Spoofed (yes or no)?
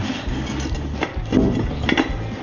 no